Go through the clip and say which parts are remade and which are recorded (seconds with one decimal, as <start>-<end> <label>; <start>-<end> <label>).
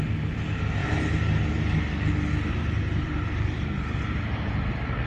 0.0-0.8 recorded; 0.8-1.4 remade; 1.4-2.6 recorded; 2.6-4.6 remade; 4.6-5.1 recorded